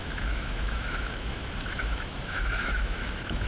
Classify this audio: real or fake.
fake